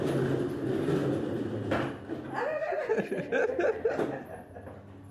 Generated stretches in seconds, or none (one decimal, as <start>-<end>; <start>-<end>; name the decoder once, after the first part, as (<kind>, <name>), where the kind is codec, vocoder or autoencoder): none